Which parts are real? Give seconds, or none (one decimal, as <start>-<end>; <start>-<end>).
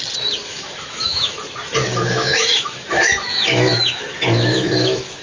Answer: 0.0-0.4; 1.4-1.9